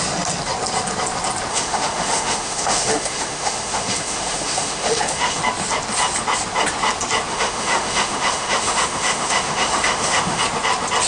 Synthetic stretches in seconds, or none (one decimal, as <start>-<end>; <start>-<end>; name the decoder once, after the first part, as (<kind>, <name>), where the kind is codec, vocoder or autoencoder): 1.5-5.4 (autoencoder, DAC-VAE); 7.3-10.4